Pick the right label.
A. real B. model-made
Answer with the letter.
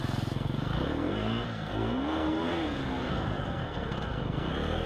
B